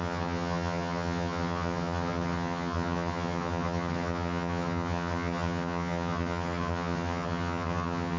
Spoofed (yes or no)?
yes